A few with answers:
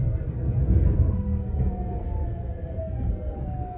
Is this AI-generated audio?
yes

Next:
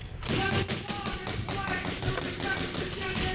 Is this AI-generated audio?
no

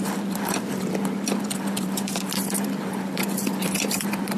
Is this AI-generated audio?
yes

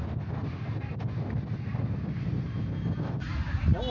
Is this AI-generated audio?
no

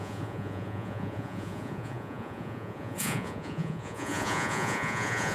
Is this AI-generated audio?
yes